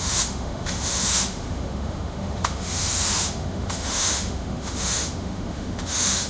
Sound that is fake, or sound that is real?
fake